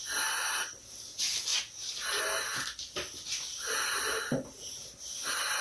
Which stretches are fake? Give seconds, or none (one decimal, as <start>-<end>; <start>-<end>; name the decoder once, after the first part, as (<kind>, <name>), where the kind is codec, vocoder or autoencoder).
none